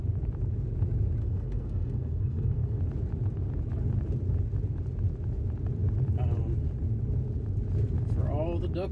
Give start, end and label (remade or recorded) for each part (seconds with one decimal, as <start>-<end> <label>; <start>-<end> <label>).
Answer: 0.0-1.2 recorded; 1.2-2.8 remade; 2.8-8.9 recorded